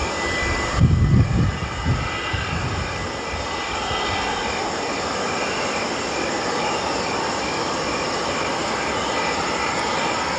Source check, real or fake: real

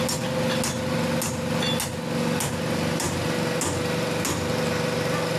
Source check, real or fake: real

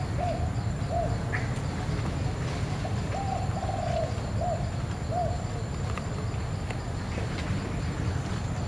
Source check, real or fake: real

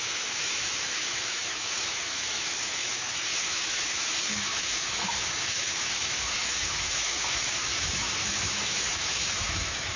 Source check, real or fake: fake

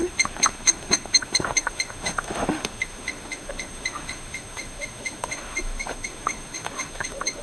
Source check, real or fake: fake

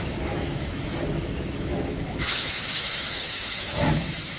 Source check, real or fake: fake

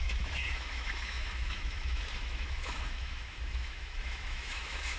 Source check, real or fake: fake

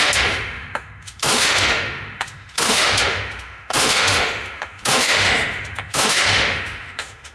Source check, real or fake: fake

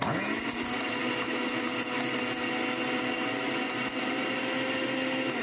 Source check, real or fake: real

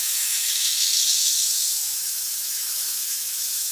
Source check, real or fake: fake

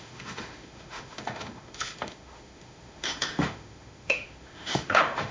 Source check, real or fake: fake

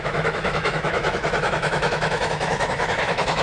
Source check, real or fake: fake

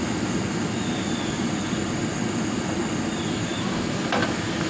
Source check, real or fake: real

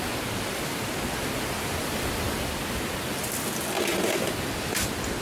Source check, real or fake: real